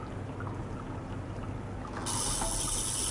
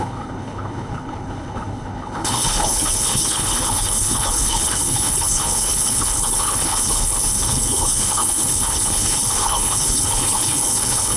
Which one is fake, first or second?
second